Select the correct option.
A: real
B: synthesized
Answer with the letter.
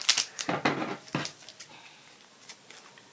A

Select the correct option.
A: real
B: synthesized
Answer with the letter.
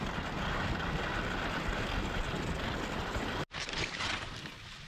A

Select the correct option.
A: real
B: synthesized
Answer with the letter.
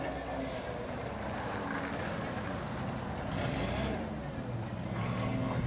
A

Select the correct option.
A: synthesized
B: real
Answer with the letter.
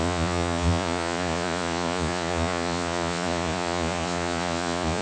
A